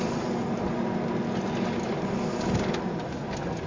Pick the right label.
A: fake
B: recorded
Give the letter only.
B